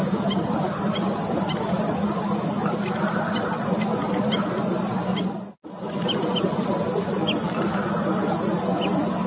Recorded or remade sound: recorded